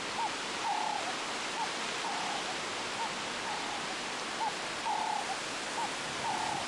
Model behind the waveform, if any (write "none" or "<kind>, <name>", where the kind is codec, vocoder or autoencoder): none